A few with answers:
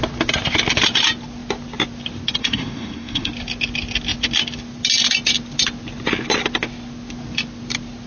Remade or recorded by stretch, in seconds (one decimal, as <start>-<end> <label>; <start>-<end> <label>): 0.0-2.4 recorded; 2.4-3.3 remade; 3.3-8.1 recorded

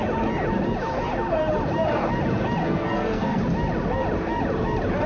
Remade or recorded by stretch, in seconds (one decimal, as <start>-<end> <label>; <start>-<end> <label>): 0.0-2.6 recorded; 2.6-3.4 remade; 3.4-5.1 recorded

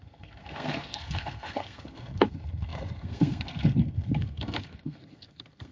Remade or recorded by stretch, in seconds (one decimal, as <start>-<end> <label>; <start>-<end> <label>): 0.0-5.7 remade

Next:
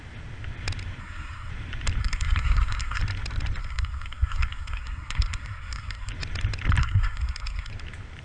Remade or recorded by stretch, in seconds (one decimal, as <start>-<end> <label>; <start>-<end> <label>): 0.0-1.0 recorded; 1.0-1.5 remade; 1.5-2.0 recorded; 2.0-3.0 remade; 3.0-3.6 recorded; 3.6-6.1 remade; 6.1-6.8 recorded; 6.8-7.7 remade; 7.7-8.2 recorded

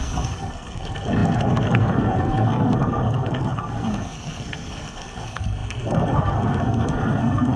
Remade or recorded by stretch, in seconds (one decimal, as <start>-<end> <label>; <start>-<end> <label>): 0.0-7.6 remade

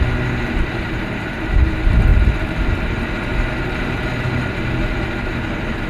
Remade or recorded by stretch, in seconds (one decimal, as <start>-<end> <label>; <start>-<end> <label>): 0.0-5.9 recorded

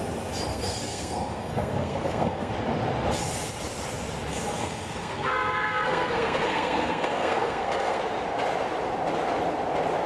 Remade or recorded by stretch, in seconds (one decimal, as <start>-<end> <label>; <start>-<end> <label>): 0.0-0.5 recorded; 0.5-2.5 remade; 2.5-4.3 recorded; 4.3-8.0 remade; 8.0-10.1 recorded